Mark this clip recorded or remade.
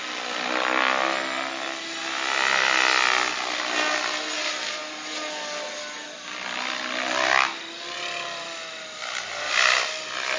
recorded